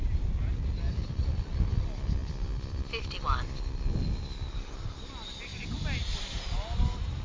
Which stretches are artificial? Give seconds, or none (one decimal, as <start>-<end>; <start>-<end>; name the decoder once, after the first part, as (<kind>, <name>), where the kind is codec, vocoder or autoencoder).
none